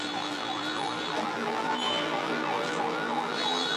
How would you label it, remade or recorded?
remade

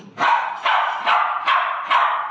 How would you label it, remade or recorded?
remade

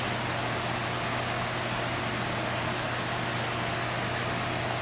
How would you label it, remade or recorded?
recorded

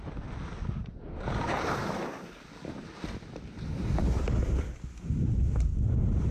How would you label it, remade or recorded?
recorded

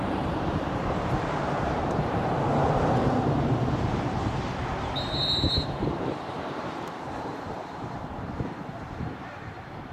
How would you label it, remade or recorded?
remade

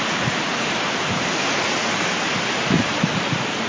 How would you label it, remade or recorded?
remade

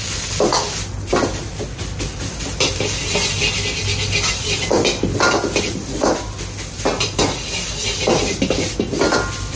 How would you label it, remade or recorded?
recorded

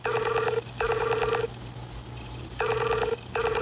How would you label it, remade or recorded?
recorded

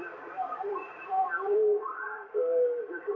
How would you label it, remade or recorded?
remade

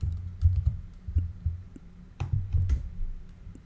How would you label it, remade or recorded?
remade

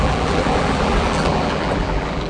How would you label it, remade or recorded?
remade